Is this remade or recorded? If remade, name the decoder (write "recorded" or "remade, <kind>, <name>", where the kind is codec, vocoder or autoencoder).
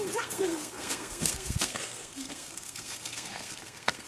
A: remade, codec, SNAC